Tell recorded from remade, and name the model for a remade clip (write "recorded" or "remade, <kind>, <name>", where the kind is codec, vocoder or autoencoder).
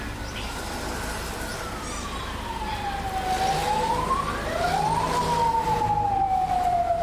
remade, vocoder, BigVGAN v2